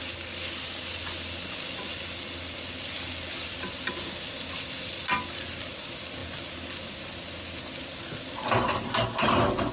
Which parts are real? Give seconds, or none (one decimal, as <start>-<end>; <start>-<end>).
0.0-9.7